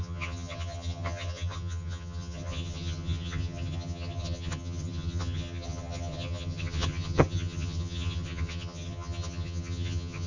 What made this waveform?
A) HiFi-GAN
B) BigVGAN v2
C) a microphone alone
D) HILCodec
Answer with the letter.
A